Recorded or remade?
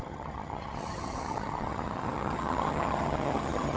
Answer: remade